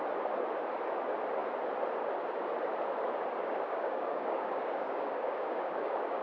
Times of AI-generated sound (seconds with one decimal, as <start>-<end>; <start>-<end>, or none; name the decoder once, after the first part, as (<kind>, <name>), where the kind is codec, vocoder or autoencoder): 3.4-6.2 (codec, DAC)